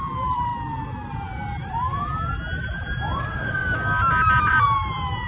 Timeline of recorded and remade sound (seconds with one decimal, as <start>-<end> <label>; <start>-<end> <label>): 0.0-0.5 remade; 0.5-1.1 recorded; 1.1-2.1 remade; 2.1-2.7 recorded; 2.7-3.6 remade; 3.6-4.3 recorded; 4.3-5.3 remade